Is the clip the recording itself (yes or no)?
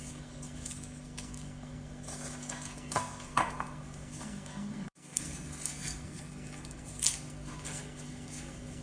no